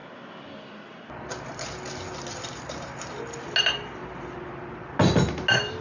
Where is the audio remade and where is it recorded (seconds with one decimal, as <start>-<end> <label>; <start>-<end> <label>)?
0.0-5.8 recorded